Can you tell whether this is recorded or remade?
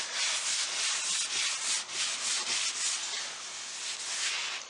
recorded